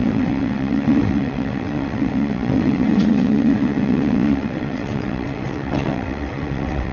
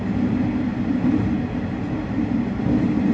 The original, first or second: second